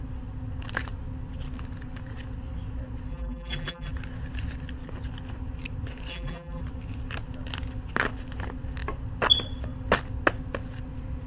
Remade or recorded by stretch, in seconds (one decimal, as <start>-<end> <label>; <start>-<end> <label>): 0.0-3.1 recorded; 3.1-3.9 remade; 3.9-6.1 recorded; 6.1-6.6 remade; 6.6-11.3 recorded